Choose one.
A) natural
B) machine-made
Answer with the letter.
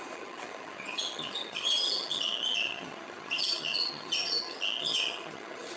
B